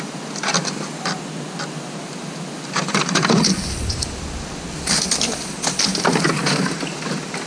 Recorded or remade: recorded